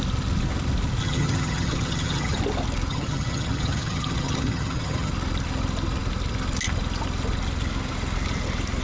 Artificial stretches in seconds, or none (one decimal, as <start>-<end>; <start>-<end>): 1.0-2.4; 2.9-5.1